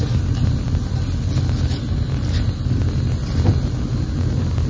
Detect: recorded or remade recorded